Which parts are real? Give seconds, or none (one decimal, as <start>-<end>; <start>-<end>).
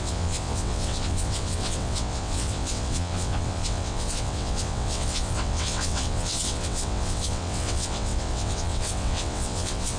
none